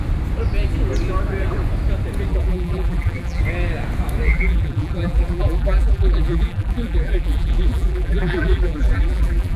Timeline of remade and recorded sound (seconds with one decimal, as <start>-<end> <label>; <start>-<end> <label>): 0.0-2.3 recorded; 2.3-3.4 remade; 3.4-4.3 recorded; 4.3-9.6 remade